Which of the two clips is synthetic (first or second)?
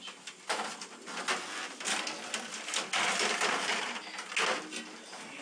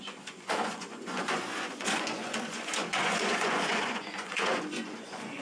second